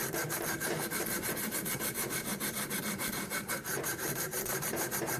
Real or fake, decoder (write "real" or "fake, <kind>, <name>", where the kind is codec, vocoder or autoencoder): fake, vocoder, BigVGAN v2